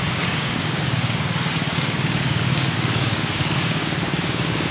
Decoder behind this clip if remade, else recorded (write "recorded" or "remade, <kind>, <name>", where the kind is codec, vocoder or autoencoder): remade, codec, DAC